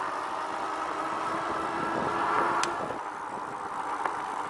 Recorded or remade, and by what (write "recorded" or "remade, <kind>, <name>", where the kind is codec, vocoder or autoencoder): recorded